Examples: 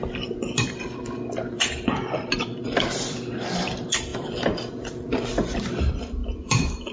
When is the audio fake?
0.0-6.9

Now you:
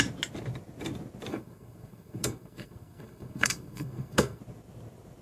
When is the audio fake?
1.3-4.4

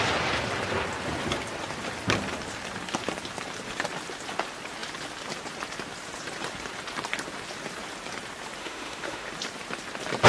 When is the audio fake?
8.6-9.3